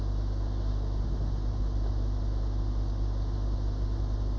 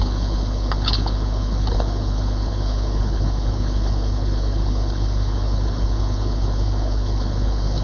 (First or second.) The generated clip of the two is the second